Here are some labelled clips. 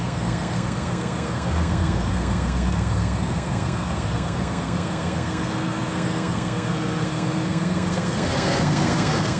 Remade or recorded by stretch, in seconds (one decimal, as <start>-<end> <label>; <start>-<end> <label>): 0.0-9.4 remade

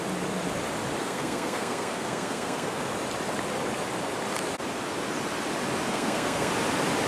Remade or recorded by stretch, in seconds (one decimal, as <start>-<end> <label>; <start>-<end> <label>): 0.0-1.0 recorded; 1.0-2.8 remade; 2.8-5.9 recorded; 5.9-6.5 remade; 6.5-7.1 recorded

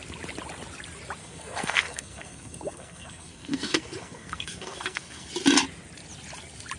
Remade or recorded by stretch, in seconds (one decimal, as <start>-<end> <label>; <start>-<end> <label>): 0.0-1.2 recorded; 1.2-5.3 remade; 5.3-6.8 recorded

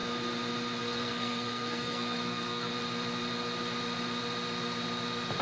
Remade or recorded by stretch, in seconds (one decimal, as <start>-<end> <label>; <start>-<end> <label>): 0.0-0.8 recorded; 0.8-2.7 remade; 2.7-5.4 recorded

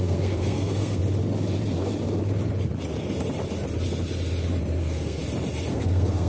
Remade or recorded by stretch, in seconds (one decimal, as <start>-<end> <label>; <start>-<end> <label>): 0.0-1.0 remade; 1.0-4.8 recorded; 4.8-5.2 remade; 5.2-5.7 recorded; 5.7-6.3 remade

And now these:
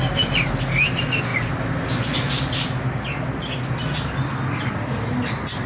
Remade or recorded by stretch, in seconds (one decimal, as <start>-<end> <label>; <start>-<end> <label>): 0.0-5.7 recorded

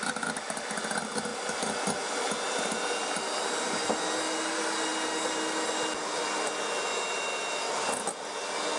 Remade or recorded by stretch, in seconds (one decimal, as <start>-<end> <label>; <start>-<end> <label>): 0.0-8.8 recorded

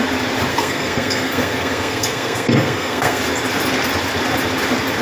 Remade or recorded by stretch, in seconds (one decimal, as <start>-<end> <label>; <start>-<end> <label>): 0.0-0.5 recorded; 0.5-3.2 remade; 3.2-5.0 recorded